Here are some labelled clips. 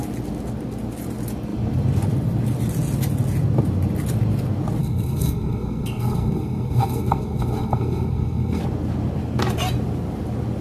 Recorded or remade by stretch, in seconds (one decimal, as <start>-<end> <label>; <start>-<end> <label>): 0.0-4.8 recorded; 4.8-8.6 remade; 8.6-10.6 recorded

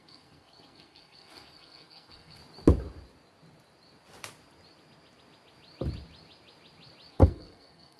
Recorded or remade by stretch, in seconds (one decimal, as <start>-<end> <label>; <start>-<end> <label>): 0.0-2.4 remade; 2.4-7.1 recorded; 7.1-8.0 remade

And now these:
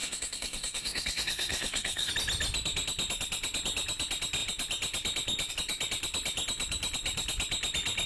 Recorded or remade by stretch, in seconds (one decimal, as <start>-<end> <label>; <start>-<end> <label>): 0.0-2.1 remade; 2.1-8.1 recorded

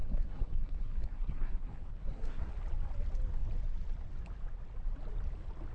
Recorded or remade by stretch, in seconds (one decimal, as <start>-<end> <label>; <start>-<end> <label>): 0.0-2.5 remade; 2.5-5.7 recorded

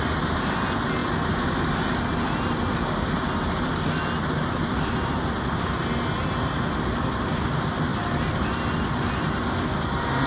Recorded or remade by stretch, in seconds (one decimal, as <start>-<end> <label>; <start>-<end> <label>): 0.0-10.3 recorded